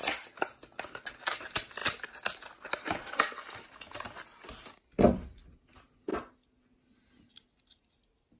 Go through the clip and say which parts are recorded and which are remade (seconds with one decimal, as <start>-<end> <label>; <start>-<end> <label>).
0.0-8.4 recorded